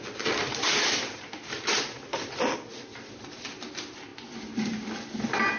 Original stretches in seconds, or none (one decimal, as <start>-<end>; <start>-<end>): 0.0-0.4; 2.5-5.6